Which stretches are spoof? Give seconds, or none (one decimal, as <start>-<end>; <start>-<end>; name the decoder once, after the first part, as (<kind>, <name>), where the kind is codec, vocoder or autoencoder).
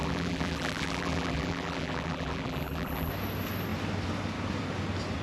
0.0-3.1 (vocoder, BigVGAN v2)